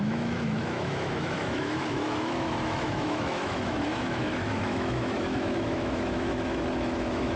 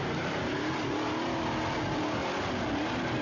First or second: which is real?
second